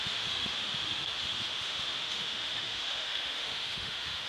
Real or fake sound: fake